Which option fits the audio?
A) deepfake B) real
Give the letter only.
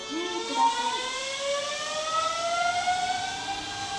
B